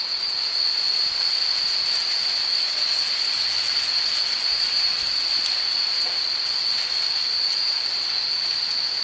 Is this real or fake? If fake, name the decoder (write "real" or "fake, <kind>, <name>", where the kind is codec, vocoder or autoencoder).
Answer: real